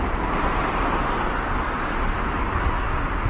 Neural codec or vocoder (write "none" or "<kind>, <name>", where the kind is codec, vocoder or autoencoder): none